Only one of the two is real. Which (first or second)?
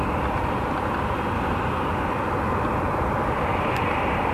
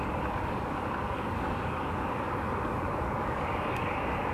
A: first